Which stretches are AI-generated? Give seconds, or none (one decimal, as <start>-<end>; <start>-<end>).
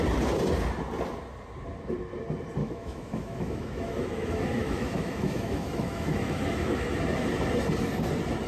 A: 2.6-7.0